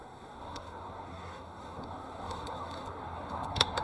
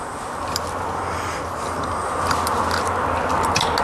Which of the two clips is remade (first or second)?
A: first